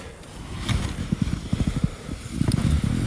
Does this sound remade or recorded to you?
recorded